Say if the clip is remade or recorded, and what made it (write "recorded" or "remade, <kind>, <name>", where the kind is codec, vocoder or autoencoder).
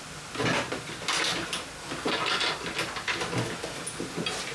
recorded